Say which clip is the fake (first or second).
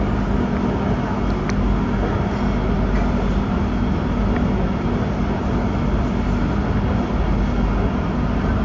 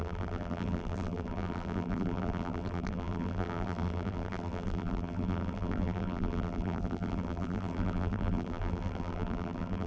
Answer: second